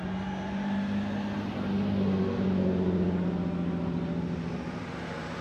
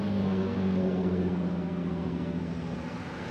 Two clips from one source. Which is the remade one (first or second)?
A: second